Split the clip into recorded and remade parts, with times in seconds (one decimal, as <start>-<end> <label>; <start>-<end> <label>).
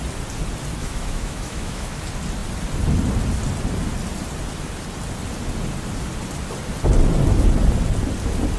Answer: 0.0-0.8 recorded; 0.8-2.0 remade; 2.0-8.6 recorded